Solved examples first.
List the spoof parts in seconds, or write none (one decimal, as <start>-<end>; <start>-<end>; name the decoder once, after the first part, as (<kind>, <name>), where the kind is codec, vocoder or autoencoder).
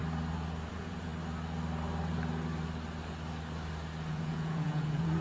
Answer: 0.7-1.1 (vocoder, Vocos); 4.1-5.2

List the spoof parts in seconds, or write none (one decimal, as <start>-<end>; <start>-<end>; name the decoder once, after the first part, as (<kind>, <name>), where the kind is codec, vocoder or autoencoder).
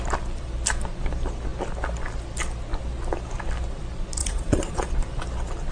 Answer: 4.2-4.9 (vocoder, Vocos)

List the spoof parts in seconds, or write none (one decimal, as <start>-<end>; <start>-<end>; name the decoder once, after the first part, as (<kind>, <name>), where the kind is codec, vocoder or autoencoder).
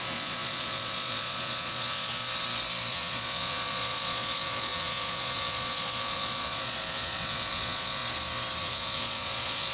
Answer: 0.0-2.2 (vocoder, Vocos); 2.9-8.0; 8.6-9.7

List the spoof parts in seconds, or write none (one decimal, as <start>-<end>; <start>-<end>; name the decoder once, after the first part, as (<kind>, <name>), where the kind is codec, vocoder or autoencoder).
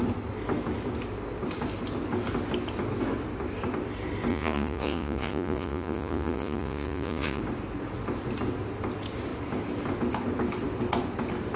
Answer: 4.3-7.4 (vocoder, Vocos)